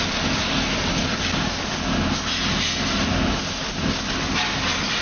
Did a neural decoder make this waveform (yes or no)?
no